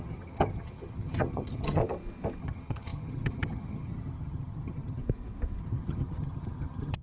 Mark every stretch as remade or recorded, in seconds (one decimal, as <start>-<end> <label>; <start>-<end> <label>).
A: 0.0-1.8 remade; 1.8-2.4 recorded; 2.4-5.0 remade; 5.0-5.6 recorded; 5.6-7.0 remade

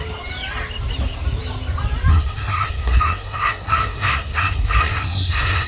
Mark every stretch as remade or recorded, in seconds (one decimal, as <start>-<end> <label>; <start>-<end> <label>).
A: 0.0-2.1 recorded; 2.1-5.7 remade

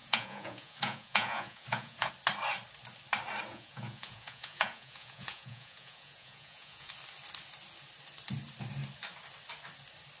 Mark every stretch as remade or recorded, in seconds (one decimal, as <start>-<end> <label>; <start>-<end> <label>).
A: 0.0-2.1 remade; 2.1-3.5 recorded; 3.5-6.9 remade; 6.9-10.2 recorded

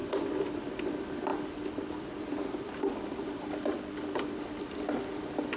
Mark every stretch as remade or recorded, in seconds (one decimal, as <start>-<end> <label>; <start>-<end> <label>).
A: 0.0-1.3 recorded; 1.3-4.7 remade; 4.7-5.6 recorded

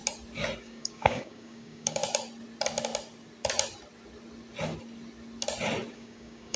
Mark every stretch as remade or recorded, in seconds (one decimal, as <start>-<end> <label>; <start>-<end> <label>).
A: 0.0-0.6 recorded; 0.6-2.0 remade; 2.0-5.9 recorded; 5.9-6.6 remade